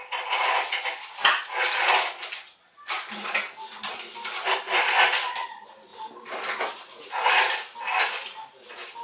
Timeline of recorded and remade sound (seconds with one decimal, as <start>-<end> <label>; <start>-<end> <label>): 0.0-1.2 remade; 1.2-3.9 recorded; 3.9-5.9 remade; 5.9-7.3 recorded; 7.3-9.0 remade